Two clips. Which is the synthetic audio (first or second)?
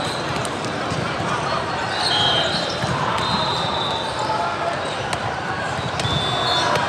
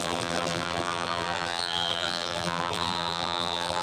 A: second